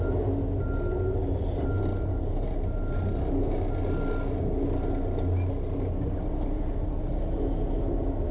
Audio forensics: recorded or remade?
recorded